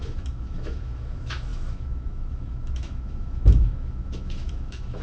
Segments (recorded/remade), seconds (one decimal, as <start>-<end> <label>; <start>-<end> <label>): 0.0-5.0 remade